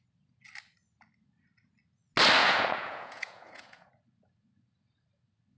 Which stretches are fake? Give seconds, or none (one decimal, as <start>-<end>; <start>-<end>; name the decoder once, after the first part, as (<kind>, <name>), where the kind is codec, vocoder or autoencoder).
2.4-3.9 (vocoder, Vocos)